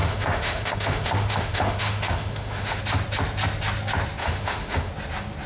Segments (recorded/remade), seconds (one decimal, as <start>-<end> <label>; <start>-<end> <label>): 0.0-2.8 remade; 2.8-4.2 recorded; 4.2-4.9 remade; 4.9-5.5 recorded